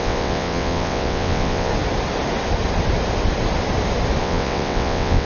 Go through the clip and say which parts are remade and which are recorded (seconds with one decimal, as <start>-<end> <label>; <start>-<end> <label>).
0.0-1.7 remade; 1.7-4.2 recorded; 4.2-5.3 remade